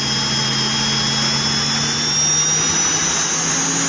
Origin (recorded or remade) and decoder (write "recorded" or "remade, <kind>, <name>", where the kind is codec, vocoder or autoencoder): recorded